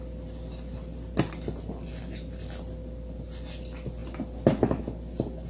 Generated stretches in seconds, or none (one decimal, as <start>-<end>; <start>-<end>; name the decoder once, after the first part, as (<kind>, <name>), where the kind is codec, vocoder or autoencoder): none